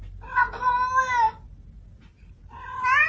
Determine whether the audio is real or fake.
real